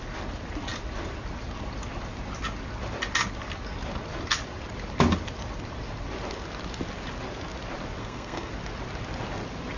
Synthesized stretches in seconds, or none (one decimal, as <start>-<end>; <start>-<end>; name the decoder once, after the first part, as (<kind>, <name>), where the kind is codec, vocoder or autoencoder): 8.0-8.5 (codec, SNAC)